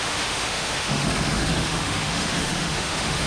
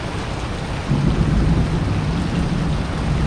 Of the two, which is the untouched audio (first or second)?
second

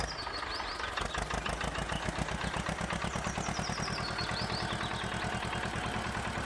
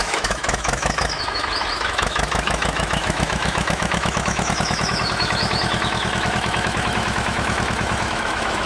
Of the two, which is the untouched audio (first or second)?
first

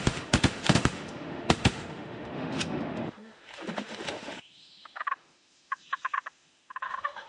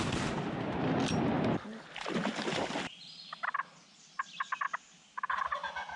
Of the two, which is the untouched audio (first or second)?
second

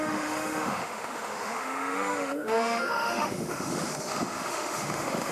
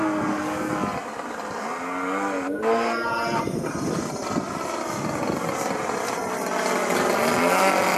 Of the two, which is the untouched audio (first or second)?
second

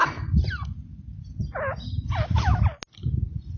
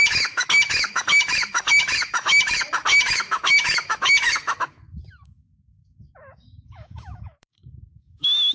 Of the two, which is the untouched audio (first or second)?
first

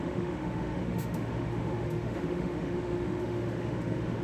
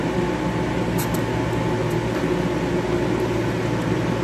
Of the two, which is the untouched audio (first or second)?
second